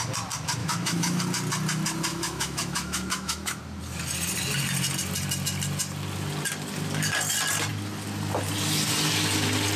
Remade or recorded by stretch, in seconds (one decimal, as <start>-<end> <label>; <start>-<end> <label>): 0.0-0.6 recorded; 0.6-1.2 remade; 1.2-2.1 recorded; 2.1-3.6 remade; 3.6-9.8 recorded

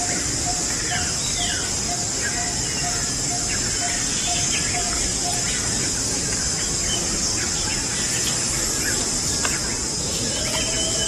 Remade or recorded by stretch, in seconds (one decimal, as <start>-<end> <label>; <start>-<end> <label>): 0.0-11.1 recorded

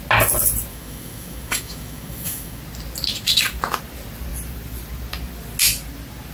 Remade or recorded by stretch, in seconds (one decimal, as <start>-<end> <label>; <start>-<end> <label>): 0.0-0.7 recorded; 0.7-2.6 remade; 2.6-6.3 recorded

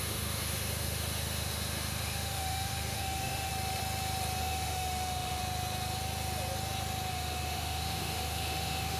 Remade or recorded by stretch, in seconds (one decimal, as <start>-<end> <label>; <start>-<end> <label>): 0.0-3.5 remade; 3.5-4.4 recorded; 4.4-5.4 remade; 5.4-7.1 recorded; 7.1-9.0 remade

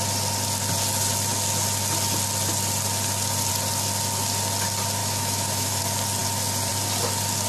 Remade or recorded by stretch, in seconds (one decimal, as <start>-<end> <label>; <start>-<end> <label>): 0.0-5.0 recorded; 5.0-5.8 remade; 5.8-7.5 recorded

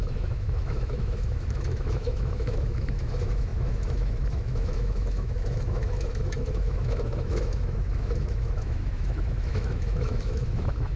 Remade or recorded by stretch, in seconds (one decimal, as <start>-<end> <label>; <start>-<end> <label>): 0.0-11.0 remade

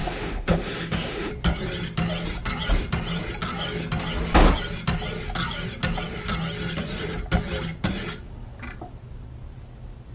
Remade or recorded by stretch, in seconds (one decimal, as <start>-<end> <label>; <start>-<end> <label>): 0.0-1.3 remade; 1.3-10.1 recorded

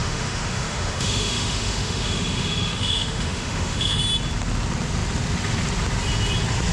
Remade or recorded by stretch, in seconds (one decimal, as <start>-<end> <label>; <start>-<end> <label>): 0.0-4.0 remade; 4.0-6.7 recorded